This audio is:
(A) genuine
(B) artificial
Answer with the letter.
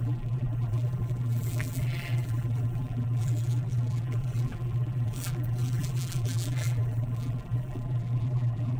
B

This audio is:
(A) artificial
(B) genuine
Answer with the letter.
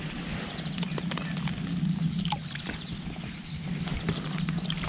B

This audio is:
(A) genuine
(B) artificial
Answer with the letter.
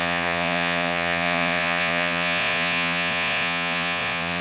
B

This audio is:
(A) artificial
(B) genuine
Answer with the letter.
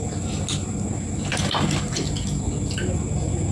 B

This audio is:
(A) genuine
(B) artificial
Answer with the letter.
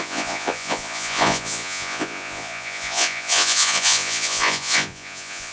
B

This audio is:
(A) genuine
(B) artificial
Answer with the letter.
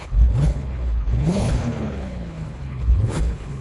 B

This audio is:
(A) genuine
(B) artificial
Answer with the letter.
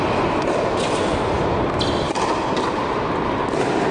A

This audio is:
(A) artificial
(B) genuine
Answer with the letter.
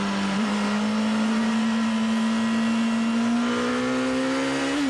B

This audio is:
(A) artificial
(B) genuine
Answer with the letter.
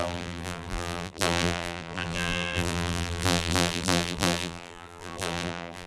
A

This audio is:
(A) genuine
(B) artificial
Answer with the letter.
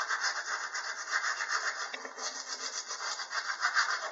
A